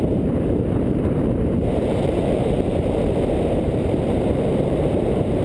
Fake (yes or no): yes